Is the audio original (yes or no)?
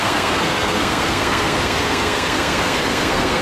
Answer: no